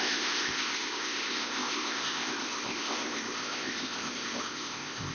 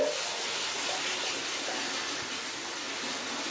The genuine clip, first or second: second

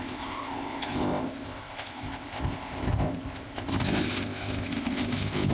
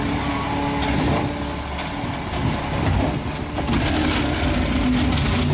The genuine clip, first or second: second